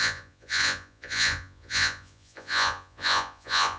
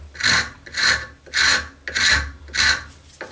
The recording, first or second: second